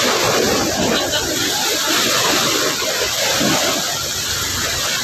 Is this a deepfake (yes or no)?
no